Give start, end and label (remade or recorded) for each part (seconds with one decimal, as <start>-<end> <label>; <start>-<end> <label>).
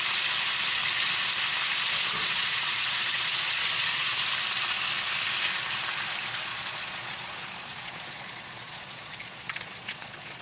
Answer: 0.0-2.2 recorded; 2.2-4.2 remade; 4.2-6.5 recorded; 6.5-10.4 remade